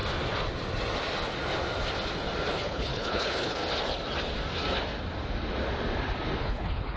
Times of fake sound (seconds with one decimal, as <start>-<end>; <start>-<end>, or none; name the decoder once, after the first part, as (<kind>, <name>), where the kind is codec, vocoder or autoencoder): 2.5-3.6 (codec, HILCodec); 6.4-7.0